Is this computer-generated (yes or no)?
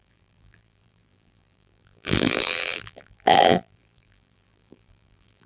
yes